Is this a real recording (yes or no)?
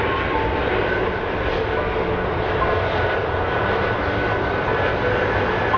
yes